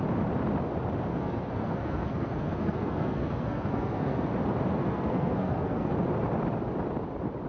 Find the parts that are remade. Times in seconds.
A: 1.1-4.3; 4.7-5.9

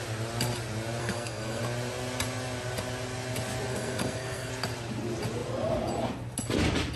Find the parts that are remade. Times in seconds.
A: 1.0-1.6; 3.7-4.5

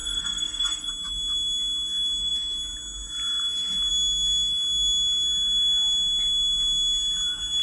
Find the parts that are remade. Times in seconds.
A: 0.0-0.9